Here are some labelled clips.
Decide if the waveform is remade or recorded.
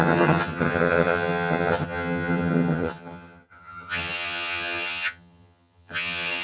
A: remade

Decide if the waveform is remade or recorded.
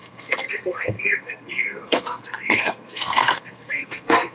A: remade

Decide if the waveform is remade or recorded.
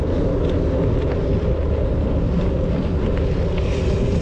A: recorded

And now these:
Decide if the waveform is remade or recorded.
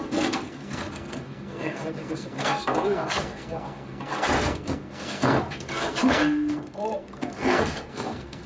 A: remade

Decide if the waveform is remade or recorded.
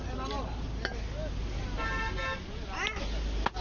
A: recorded